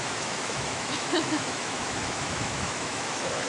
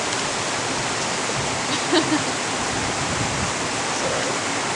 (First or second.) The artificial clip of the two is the first